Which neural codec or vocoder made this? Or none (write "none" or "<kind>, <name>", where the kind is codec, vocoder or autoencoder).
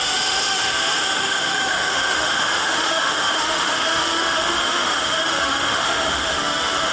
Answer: autoencoder, DAC-VAE